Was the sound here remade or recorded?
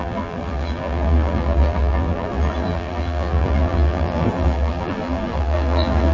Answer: remade